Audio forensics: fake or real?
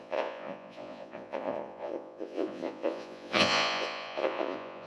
fake